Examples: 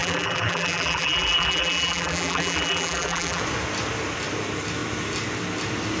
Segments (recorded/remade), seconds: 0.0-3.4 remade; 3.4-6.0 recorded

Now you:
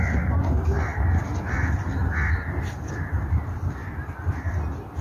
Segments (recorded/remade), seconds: 0.0-5.0 recorded

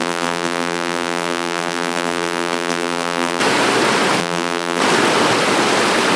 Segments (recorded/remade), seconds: 0.0-3.4 remade; 3.4-4.2 recorded; 4.2-4.8 remade; 4.8-6.2 recorded

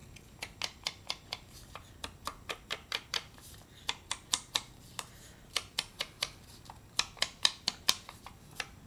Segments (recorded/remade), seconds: 0.0-1.7 recorded; 1.7-8.9 remade